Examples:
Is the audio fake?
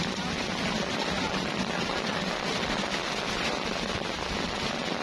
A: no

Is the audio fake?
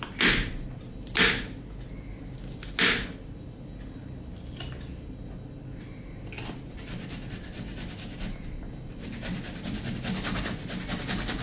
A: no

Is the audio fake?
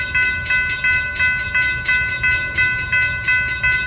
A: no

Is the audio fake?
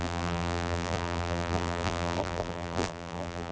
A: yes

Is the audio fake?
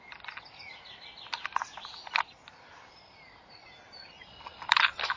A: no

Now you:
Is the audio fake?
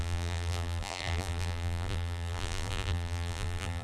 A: yes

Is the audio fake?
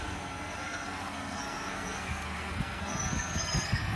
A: yes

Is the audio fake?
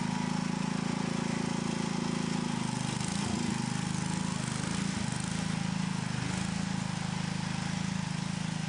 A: no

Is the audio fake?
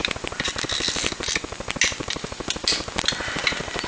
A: no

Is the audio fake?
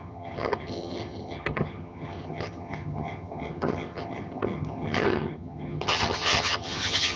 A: yes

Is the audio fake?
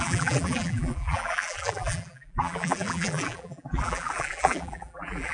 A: yes